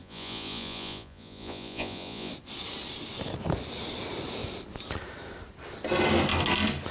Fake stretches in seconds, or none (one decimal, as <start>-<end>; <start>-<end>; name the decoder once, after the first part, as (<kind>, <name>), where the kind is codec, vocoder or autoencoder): 0.0-2.3 (vocoder, Vocos)